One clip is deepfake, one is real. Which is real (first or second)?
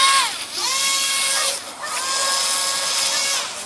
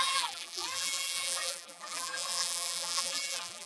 first